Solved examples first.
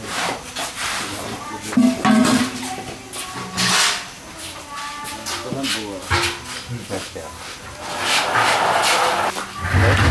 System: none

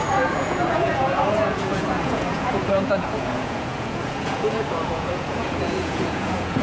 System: vocoder, Vocos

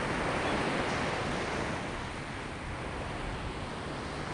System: none